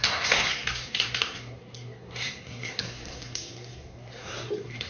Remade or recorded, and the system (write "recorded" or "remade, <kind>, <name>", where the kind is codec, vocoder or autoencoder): remade, codec, SNAC